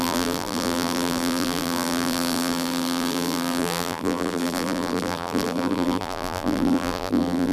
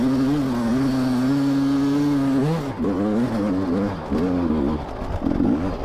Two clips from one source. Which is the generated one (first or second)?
first